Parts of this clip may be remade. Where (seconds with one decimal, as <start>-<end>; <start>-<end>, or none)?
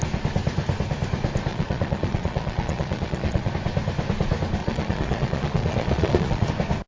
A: 1.5-3.5; 4.6-6.5